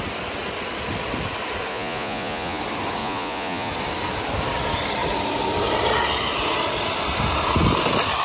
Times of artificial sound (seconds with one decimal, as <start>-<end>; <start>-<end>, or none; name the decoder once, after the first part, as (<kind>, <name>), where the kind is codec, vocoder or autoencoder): 1.7-2.6 (vocoder, Vocos); 3.0-3.7